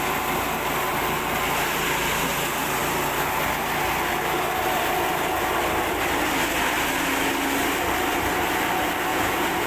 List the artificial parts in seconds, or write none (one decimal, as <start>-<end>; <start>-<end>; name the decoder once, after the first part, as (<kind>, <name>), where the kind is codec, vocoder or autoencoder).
9.1-9.7 (vocoder, Vocos)